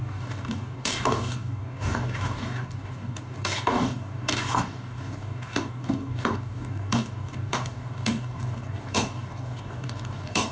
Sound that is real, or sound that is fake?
fake